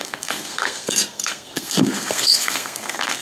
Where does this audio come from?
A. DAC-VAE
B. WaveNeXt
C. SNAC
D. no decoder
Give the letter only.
C